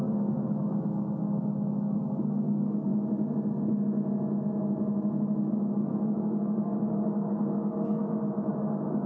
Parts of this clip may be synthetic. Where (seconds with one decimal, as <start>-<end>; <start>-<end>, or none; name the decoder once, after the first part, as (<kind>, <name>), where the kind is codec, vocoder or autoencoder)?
0.0-2.9 (codec, DAC); 5.9-8.0; 8.5-9.1